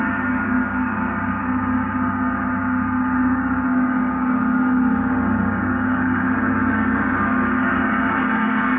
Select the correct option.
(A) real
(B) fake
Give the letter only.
B